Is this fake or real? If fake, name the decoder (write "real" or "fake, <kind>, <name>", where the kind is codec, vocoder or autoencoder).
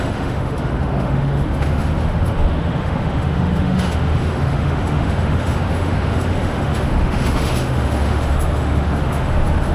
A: fake, autoencoder, DAC-VAE